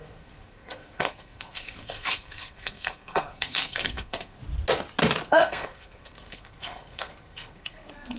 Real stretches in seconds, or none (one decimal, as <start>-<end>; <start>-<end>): 4.4-5.2

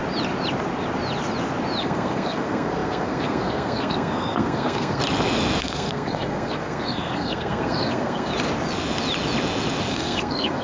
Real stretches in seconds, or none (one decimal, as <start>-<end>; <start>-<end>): 0.0-1.8; 5.0-5.6; 8.3-9.9

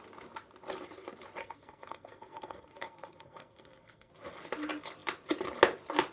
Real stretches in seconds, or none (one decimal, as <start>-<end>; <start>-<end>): 0.0-1.4; 4.1-6.1

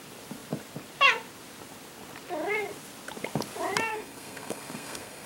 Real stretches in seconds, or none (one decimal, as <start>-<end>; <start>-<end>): 0.0-3.9

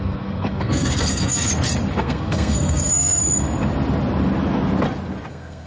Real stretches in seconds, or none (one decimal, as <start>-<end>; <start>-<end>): 1.5-2.0; 3.2-5.3

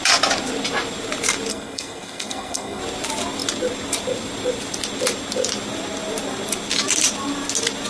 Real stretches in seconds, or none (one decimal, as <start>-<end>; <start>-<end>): 0.0-1.5; 2.8-7.9

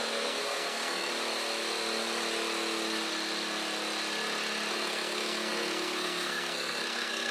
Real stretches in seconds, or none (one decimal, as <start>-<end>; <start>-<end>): 1.1-4.7

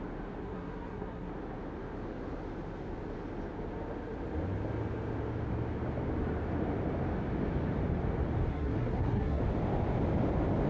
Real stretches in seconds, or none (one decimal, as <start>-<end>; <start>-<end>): 0.0-0.4; 1.3-8.5; 9.4-10.7